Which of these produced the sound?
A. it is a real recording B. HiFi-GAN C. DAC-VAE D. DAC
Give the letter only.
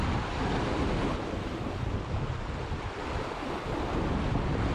A